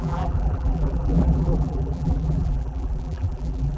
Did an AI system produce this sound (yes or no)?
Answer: yes